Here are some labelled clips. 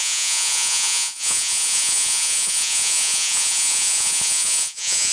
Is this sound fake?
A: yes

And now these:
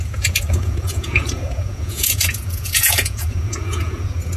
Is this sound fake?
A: yes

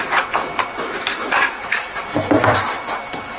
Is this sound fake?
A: no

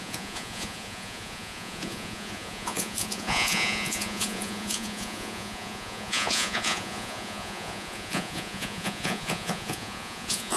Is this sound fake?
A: yes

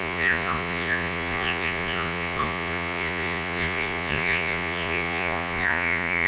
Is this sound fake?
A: yes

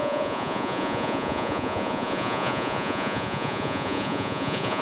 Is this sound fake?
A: yes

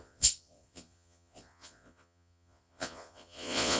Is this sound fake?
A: yes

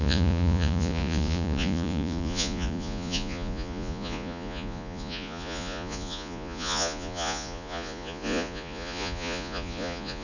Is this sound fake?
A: yes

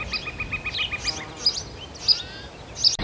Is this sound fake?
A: no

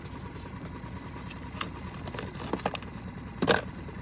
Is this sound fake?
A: no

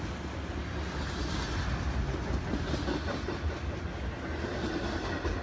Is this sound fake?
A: no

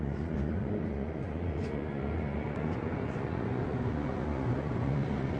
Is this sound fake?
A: yes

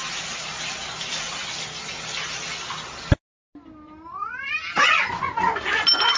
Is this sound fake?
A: no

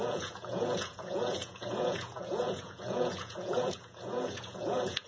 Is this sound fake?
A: yes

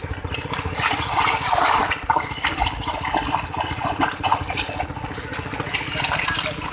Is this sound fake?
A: no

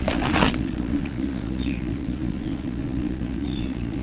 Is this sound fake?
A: yes